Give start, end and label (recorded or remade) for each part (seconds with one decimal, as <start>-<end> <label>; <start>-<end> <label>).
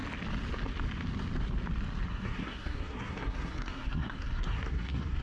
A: 0.0-2.1 recorded; 2.1-5.2 remade